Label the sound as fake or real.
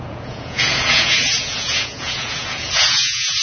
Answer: fake